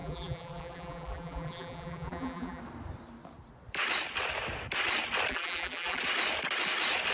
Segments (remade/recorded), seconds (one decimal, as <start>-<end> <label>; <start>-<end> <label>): 0.0-2.6 remade; 2.6-5.3 recorded; 5.3-6.0 remade; 6.0-7.1 recorded